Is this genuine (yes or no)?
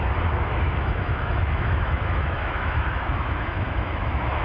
no